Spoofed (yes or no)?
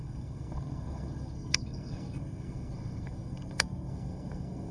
yes